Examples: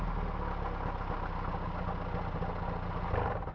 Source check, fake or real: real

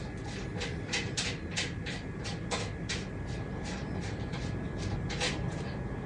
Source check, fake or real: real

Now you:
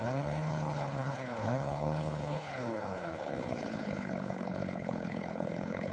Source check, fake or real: fake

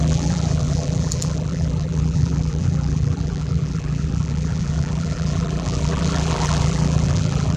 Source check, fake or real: fake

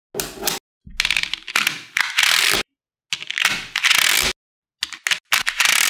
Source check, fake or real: real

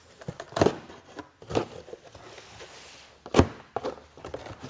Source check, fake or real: real